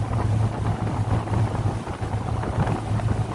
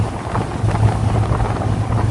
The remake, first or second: first